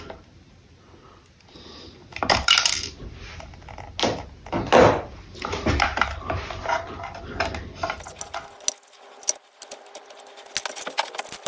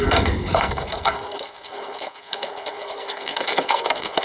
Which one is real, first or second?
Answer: first